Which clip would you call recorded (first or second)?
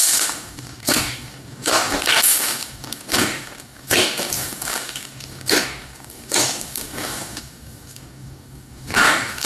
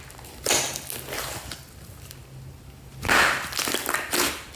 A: second